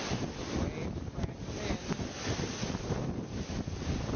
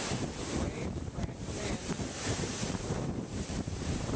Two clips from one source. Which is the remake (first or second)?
second